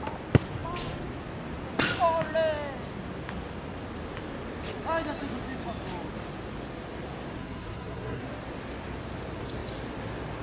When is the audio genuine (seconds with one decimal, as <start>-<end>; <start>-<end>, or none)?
0.0-7.4; 8.2-10.4